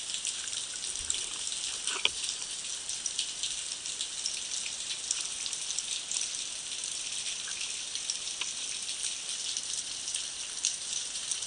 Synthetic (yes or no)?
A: no